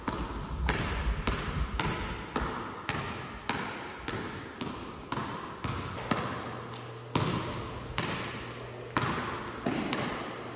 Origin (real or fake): real